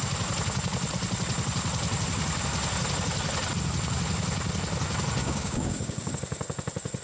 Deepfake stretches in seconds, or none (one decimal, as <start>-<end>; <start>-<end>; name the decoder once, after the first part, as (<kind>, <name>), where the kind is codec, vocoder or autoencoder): 5.2-6.1 (codec, DAC)